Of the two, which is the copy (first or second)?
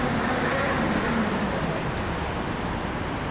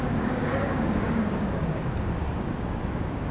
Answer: second